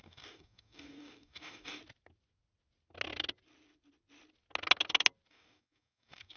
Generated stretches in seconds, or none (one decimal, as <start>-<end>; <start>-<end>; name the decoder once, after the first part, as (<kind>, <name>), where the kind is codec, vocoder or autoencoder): 0.0-1.8 (codec, DAC); 5.3-6.4